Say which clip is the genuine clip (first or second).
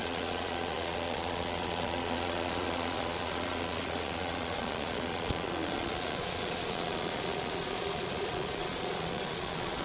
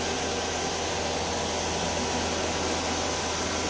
second